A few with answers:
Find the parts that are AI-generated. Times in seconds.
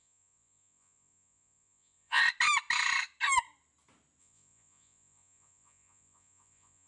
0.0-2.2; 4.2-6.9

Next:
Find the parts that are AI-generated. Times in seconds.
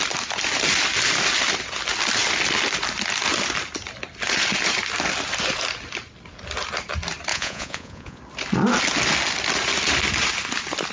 7.3-8.2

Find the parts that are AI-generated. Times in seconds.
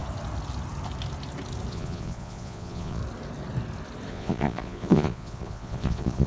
1.7-3.0; 4.1-6.3